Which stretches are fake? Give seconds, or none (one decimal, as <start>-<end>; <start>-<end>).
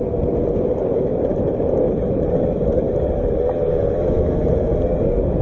none